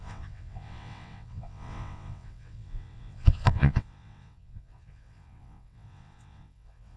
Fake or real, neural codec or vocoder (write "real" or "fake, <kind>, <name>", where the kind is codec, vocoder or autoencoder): fake, vocoder, WaveNeXt